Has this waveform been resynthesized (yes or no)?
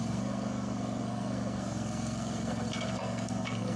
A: yes